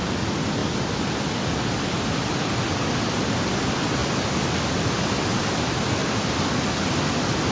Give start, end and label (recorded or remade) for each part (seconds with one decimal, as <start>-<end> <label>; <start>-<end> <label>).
0.0-7.5 recorded